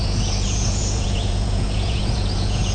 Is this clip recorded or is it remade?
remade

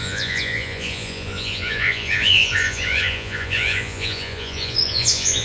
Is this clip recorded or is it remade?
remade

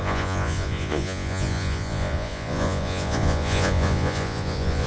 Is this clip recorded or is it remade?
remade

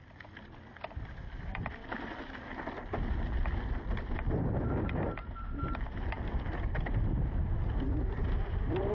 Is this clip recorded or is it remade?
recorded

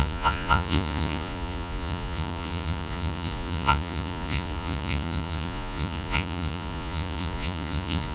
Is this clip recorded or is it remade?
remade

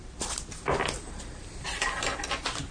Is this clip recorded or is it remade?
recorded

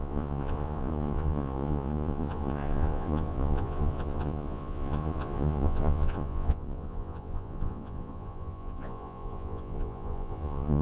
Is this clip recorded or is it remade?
remade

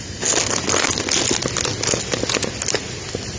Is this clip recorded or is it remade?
recorded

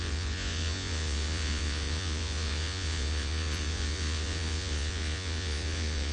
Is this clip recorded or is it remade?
remade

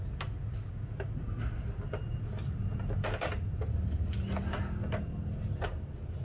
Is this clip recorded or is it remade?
recorded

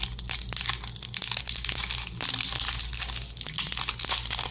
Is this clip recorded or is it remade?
recorded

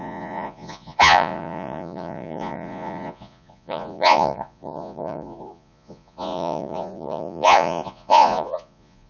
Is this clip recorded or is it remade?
remade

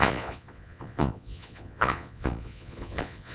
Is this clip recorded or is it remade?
remade